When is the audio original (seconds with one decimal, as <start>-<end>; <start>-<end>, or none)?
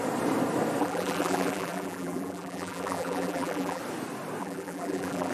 0.0-0.8; 3.8-4.4